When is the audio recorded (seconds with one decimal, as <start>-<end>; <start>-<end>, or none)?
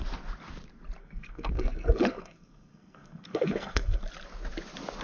0.0-1.0; 4.0-5.0